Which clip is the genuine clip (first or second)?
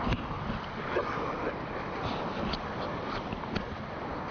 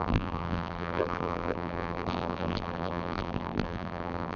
first